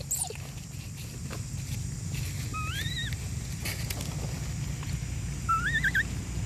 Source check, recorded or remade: recorded